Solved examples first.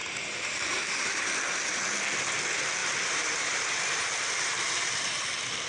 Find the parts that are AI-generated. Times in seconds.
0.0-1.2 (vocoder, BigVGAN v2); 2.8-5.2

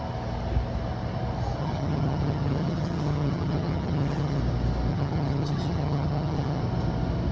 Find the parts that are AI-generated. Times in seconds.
1.6-4.4 (vocoder, HiFi-GAN); 4.9-6.6

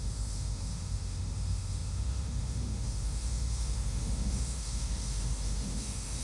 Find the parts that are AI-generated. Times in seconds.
0.0-6.2 (autoencoder, DAC-VAE)

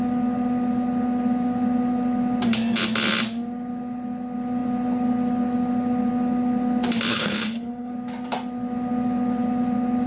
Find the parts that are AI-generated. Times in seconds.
7.1-7.9 (codec, HILCodec)

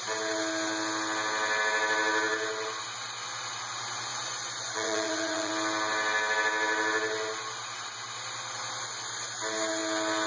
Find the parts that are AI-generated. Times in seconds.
4.1-5.5 (vocoder, Vocos)

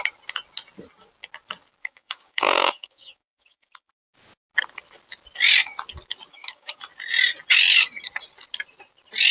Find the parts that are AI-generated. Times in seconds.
1.8-3.9 (codec, DAC); 6.3-6.8